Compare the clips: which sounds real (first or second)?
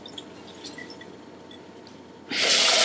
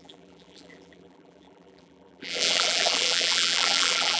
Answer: first